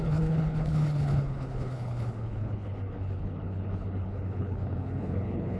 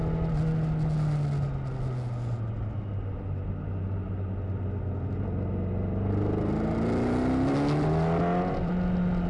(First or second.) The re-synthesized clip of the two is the first